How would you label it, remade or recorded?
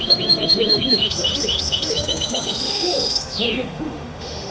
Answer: remade